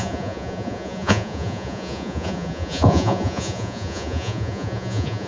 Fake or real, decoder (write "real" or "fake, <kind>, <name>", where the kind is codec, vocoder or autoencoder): fake, vocoder, Vocos